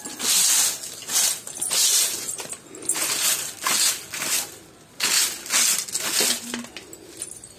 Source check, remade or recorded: recorded